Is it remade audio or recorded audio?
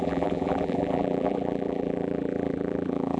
remade